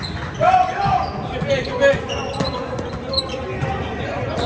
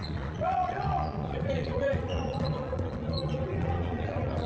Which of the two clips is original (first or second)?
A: first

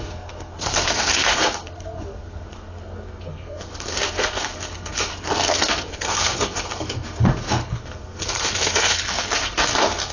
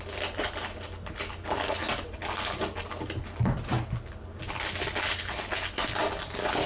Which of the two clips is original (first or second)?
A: second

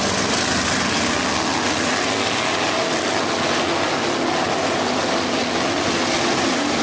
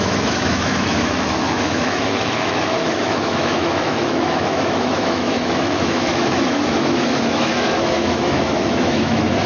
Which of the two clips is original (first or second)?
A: first